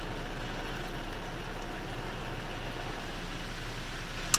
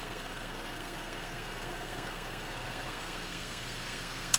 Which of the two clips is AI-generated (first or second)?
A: second